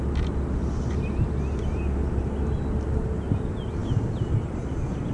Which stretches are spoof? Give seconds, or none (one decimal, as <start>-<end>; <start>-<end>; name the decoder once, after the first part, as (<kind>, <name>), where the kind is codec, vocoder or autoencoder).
none